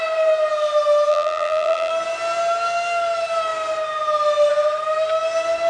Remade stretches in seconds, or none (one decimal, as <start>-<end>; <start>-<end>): 1.1-1.9